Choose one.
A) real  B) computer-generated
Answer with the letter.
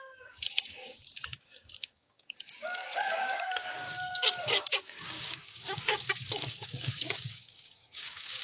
B